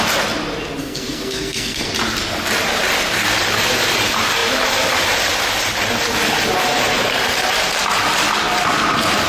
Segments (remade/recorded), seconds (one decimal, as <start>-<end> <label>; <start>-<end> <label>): 0.0-0.8 recorded; 0.8-1.9 remade; 1.9-9.3 recorded